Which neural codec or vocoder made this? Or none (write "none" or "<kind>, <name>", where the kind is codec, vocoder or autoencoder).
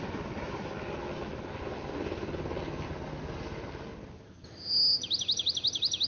none